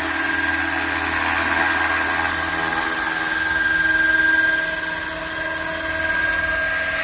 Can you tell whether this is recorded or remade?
recorded